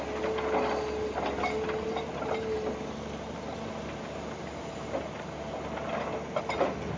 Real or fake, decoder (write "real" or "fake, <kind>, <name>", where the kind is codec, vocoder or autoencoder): real